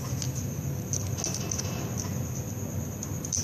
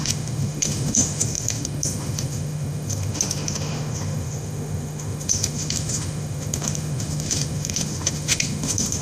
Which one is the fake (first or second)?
second